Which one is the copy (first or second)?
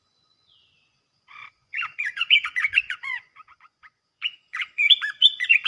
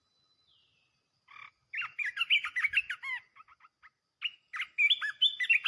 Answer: first